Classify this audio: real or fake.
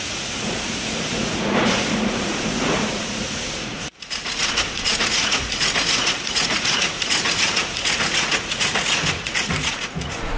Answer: fake